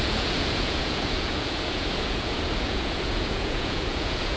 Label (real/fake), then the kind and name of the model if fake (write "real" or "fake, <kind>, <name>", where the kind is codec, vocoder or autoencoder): fake, vocoder, Vocos